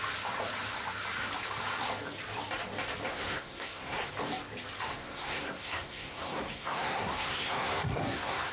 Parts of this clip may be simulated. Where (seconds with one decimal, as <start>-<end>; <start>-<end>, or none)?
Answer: 3.1-4.1; 4.9-8.5